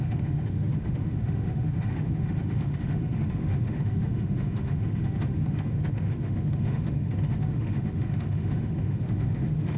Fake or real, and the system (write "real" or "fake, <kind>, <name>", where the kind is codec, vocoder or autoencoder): fake, autoencoder, DAC-VAE